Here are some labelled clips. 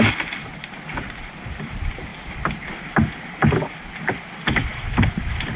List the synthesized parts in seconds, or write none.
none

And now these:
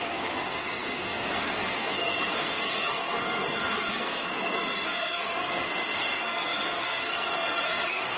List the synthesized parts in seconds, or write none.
0.0-8.2 (codec, SNAC)

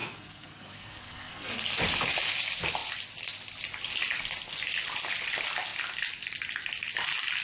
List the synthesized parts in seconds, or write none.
0.0-1.5 (codec, SNAC)

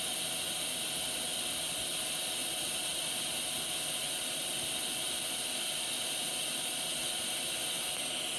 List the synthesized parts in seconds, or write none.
none

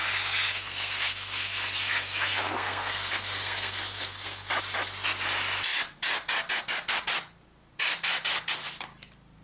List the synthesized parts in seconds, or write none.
0.0-4.5 (codec, SNAC)

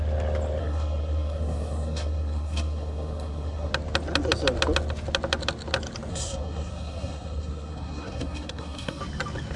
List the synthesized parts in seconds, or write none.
0.6-3.7 (codec, SNAC); 6.1-9.0

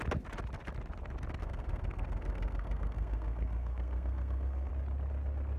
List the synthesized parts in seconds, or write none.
1.4-4.7 (codec, SNAC)

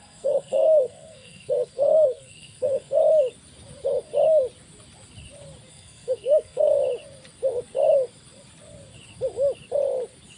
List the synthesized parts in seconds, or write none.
0.0-3.0 (codec, SNAC); 5.7-6.7